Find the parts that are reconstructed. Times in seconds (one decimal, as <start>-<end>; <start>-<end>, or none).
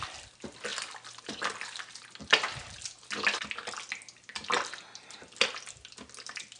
none